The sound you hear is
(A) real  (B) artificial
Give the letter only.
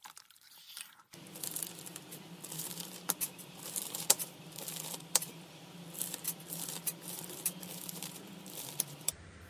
B